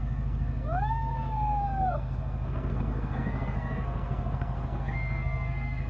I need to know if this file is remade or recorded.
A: remade